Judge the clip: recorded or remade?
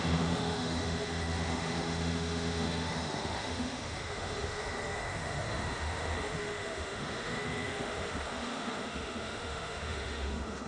remade